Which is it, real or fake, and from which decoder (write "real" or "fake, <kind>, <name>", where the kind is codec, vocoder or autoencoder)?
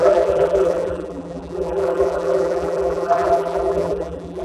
fake, vocoder, BigVGAN v2